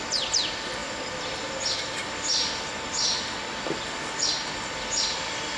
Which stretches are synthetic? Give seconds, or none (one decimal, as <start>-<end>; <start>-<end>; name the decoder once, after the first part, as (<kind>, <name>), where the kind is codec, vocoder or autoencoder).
none